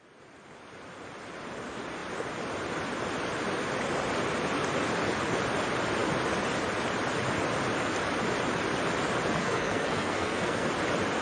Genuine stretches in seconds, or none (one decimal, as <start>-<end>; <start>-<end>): 0.0-9.4; 10.7-11.2